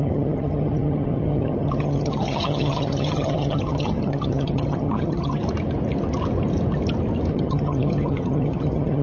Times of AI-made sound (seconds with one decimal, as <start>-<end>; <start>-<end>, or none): 0.0-5.4; 7.3-9.0